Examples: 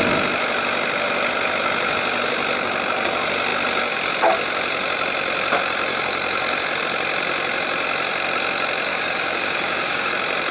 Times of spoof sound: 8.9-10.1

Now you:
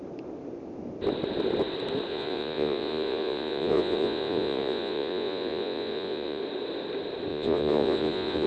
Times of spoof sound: 2.1-6.4; 7.3-8.5

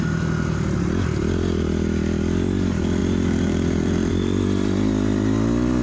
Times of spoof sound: none

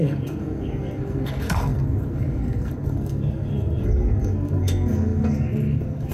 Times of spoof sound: 0.0-6.1

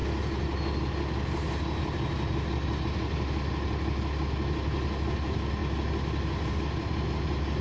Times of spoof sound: none